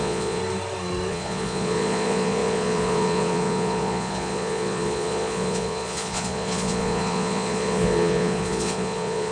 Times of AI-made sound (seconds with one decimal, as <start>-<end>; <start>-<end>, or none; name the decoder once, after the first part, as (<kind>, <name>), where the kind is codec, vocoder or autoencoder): 0.0-0.4 (vocoder, Vocos); 1.1-9.3